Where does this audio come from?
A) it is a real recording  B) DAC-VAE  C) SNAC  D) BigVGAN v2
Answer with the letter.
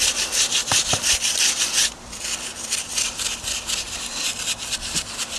D